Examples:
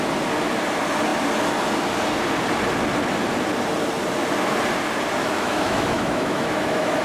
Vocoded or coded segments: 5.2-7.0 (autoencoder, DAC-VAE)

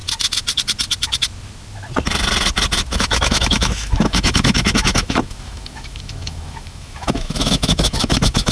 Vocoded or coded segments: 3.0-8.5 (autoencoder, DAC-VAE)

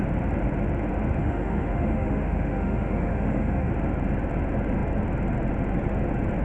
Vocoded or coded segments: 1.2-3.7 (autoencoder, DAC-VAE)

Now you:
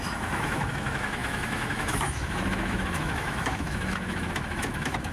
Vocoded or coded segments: 0.0-5.1 (autoencoder, DAC-VAE)